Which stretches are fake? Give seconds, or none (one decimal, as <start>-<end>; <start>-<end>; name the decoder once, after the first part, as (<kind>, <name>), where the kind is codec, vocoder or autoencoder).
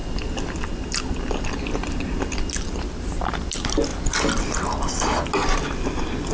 none